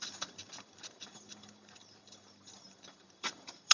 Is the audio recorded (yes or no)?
no